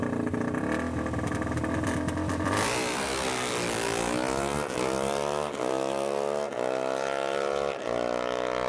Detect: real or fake real